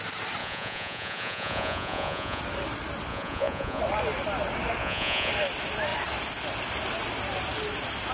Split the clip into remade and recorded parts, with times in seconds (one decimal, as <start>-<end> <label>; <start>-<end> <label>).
0.0-0.4 recorded; 0.4-2.4 remade; 2.4-3.1 recorded; 3.1-3.8 remade; 3.8-4.8 recorded; 4.8-5.3 remade; 5.3-8.1 recorded